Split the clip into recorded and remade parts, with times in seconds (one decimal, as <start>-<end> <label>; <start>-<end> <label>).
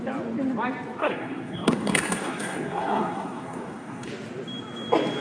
0.0-1.0 recorded; 1.0-4.1 remade; 4.1-5.2 recorded